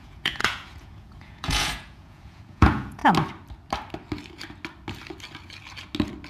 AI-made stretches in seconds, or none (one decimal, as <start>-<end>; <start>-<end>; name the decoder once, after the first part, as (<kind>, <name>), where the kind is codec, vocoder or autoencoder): 0.0-3.0 (vocoder, Vocos)